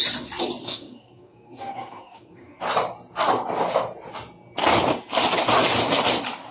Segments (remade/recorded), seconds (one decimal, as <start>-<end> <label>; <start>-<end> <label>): 0.0-0.6 recorded; 0.6-2.6 remade; 2.6-6.5 recorded